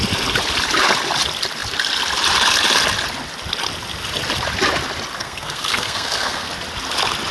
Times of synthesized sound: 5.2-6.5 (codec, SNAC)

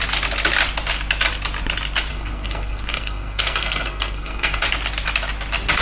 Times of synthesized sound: 2.1-4.6 (codec, SNAC)

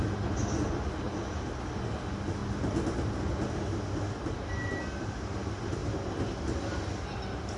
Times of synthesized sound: none